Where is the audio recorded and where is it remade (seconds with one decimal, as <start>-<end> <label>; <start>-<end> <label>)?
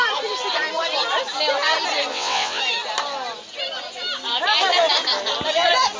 0.0-2.1 recorded; 2.1-2.6 remade; 2.6-6.0 recorded